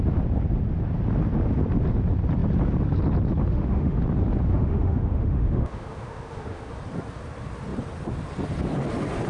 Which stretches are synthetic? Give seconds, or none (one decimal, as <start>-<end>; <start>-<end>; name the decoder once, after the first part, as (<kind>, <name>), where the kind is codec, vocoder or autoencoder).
3.4-4.0 (autoencoder, DAC-VAE); 4.5-6.7